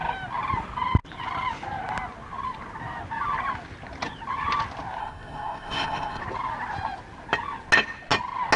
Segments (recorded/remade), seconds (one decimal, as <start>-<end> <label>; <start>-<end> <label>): 0.0-5.0 recorded; 5.0-6.2 remade; 6.2-8.6 recorded